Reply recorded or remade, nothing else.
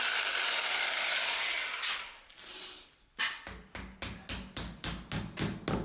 recorded